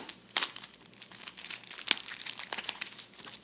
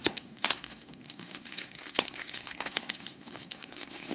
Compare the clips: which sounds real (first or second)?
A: first